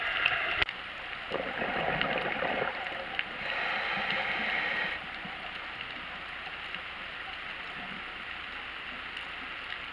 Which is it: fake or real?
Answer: real